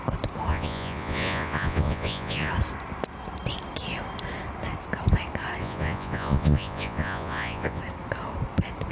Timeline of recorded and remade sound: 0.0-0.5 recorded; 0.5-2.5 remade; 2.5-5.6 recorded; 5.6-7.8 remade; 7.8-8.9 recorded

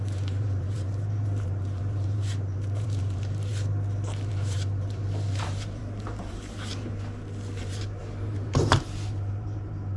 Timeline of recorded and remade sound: 0.0-3.5 remade; 3.5-4.3 recorded; 4.3-6.9 remade; 6.9-7.6 recorded; 7.6-10.0 remade

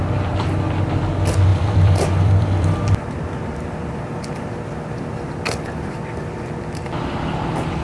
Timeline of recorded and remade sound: 0.0-0.9 remade; 0.9-1.5 recorded; 1.5-6.2 remade; 6.2-7.8 recorded

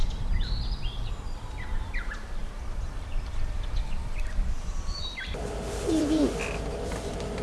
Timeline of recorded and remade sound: 0.0-0.8 recorded; 0.8-7.4 remade

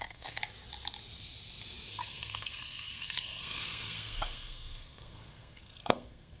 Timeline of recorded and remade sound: 0.0-0.4 remade; 0.4-1.9 recorded; 1.9-6.4 remade

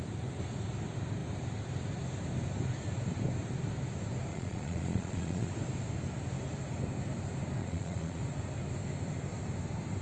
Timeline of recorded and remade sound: 0.0-4.3 recorded; 4.3-5.5 remade; 5.5-7.6 recorded; 7.6-8.2 remade; 8.2-10.0 recorded

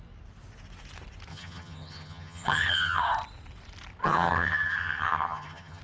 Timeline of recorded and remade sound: 0.0-1.3 recorded; 1.3-3.0 remade; 3.0-4.0 recorded; 4.0-5.8 remade